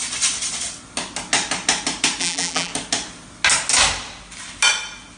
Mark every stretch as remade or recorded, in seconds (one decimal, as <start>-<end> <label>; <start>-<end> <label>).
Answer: 0.0-2.2 recorded; 2.2-2.7 remade; 2.7-5.2 recorded